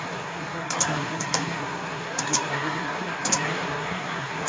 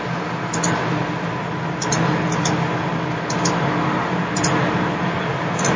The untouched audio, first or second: second